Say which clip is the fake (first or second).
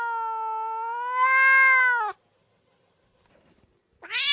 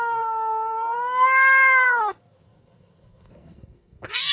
second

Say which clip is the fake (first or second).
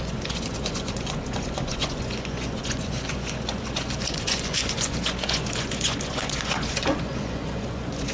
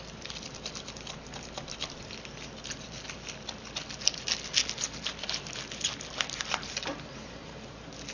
first